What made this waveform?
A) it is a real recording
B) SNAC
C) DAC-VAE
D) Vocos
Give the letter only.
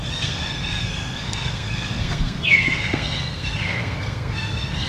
B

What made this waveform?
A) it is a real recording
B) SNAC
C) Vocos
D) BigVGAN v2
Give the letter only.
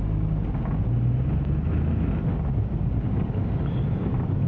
A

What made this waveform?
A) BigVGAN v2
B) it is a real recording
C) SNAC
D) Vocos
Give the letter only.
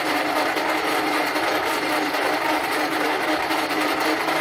B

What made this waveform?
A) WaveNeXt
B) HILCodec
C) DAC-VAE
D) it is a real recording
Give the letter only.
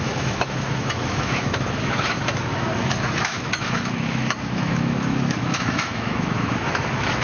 C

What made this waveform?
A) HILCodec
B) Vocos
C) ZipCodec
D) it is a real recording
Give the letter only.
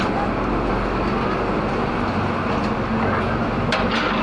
D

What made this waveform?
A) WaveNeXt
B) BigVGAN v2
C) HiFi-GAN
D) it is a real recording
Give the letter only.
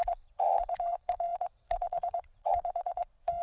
A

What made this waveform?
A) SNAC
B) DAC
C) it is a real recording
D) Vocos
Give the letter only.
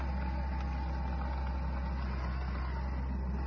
C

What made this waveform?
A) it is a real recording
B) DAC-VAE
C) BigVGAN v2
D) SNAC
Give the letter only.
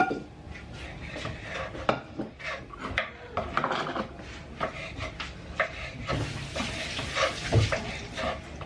C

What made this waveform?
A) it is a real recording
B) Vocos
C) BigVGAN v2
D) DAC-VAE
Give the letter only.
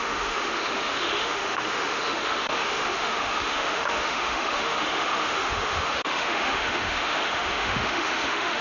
D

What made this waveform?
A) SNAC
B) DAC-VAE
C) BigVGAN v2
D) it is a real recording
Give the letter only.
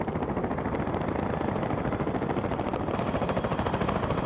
D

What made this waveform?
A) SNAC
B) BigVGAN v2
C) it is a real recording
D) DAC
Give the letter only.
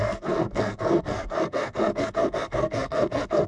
A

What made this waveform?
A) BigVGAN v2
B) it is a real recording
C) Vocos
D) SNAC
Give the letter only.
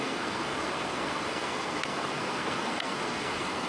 D